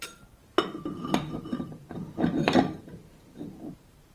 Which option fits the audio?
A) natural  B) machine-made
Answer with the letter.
B